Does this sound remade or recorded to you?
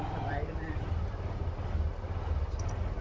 recorded